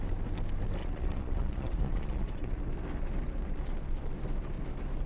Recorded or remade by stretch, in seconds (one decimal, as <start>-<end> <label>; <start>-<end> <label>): 0.0-0.8 recorded; 0.8-2.6 remade; 2.6-5.1 recorded

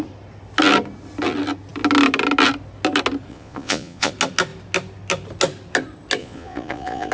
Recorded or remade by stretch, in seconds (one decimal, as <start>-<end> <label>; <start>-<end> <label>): 0.0-3.3 recorded; 3.3-4.1 remade; 4.1-6.2 recorded; 6.2-7.1 remade

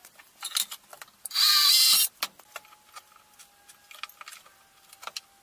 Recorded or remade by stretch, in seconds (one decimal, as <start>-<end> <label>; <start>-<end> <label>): 0.0-5.4 recorded

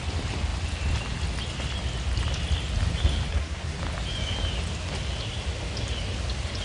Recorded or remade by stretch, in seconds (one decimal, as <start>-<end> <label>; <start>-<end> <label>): 0.0-3.3 recorded; 3.3-3.8 remade; 3.8-6.6 recorded

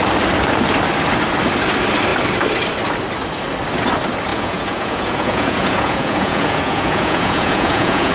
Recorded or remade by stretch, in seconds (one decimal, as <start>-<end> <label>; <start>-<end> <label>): 0.0-4.3 recorded; 4.3-8.1 remade

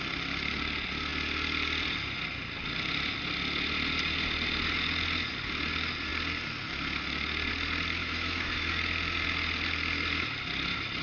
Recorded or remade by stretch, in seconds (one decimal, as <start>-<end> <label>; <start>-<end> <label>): 0.0-8.0 recorded; 8.0-8.7 remade; 8.7-11.0 recorded

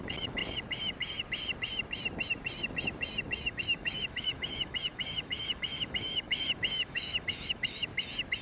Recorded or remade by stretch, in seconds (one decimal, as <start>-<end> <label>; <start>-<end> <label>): 0.0-0.4 remade; 0.4-3.5 recorded; 3.5-7.9 remade; 7.9-8.4 recorded